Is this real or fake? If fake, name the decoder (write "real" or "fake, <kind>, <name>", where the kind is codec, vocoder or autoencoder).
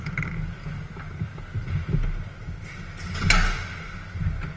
real